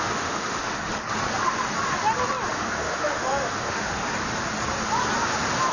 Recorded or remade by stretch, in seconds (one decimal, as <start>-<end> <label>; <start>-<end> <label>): 0.0-0.9 remade; 0.9-2.5 recorded; 2.5-4.1 remade; 4.1-5.7 recorded